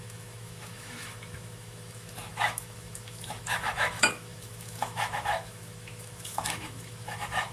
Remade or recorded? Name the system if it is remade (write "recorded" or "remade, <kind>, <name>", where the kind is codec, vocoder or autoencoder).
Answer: remade, autoencoder, DAC-VAE